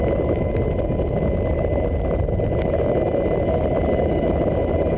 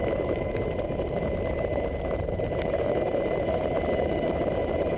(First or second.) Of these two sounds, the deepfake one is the second